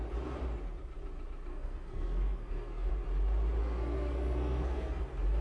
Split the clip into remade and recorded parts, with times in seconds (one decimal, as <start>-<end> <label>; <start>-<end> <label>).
0.0-1.5 recorded; 1.5-2.9 remade; 2.9-3.6 recorded; 3.6-5.0 remade; 5.0-5.4 recorded